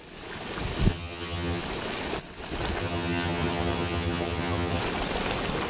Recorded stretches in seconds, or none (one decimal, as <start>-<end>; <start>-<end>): 0.0-0.9; 1.6-2.8; 4.8-5.7